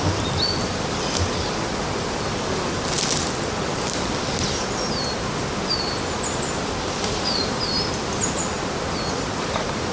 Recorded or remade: recorded